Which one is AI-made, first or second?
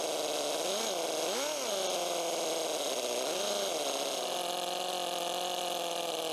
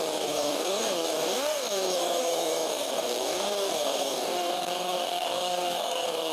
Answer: second